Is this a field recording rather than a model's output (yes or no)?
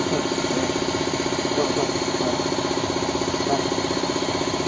yes